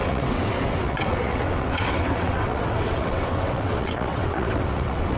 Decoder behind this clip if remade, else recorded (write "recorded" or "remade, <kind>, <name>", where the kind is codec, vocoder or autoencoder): remade, vocoder, WaveNeXt